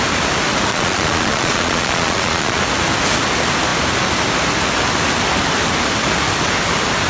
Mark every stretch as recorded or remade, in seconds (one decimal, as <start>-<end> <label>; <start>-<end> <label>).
0.0-0.7 recorded; 0.7-2.6 remade; 2.6-7.1 recorded